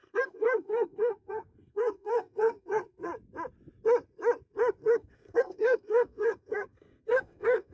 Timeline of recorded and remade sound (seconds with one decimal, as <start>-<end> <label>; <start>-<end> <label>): 0.0-3.1 remade; 3.1-4.8 recorded; 4.8-7.7 remade